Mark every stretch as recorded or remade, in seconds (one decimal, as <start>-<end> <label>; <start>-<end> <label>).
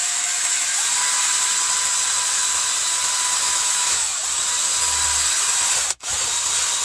0.0-0.8 remade; 0.8-3.5 recorded; 3.5-4.2 remade; 4.2-6.8 recorded